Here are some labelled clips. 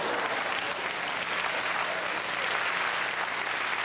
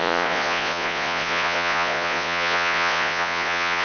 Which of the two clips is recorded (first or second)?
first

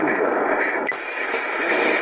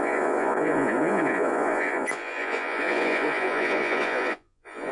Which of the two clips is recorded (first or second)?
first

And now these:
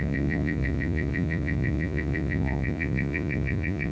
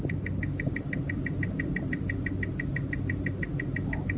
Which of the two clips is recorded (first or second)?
second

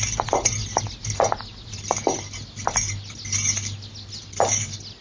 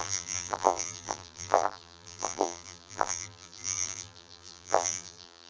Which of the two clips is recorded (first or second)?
first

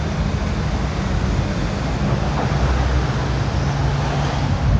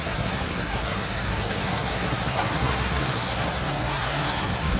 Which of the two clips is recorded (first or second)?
first